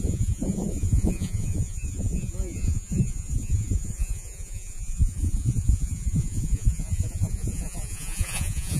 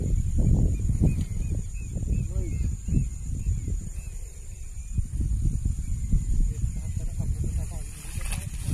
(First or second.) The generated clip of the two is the first